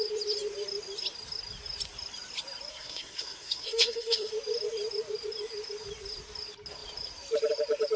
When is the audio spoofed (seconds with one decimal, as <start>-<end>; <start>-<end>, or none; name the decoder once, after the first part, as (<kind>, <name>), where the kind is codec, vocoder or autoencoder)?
2.7-4.3 (codec, SNAC)